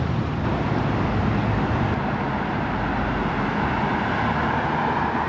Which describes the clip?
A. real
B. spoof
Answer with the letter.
A